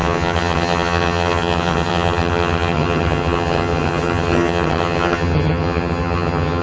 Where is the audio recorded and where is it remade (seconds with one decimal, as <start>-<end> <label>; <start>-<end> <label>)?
0.0-6.6 remade